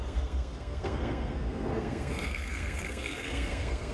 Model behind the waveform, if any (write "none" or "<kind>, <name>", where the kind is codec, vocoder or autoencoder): codec, SNAC